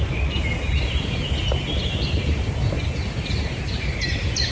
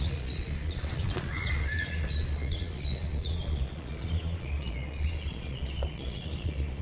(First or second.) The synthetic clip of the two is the second